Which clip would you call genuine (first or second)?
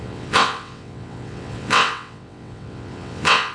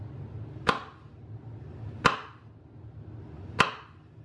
second